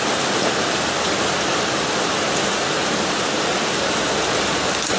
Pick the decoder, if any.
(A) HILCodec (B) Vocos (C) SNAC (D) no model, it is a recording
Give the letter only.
D